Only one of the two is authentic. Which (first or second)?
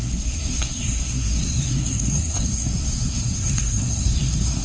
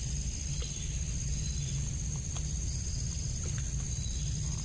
second